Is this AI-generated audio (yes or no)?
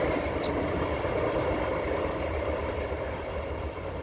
no